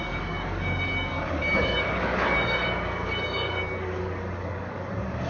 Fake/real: fake